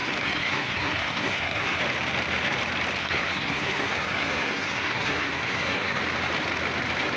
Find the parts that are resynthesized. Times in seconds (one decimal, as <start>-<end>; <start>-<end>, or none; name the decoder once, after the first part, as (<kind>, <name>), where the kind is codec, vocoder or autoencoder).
0.0-1.8 (codec, SNAC); 3.0-6.0